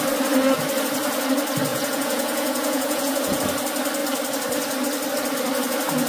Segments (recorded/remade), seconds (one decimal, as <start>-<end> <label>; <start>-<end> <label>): 0.0-1.7 recorded; 1.7-3.4 remade; 3.4-6.1 recorded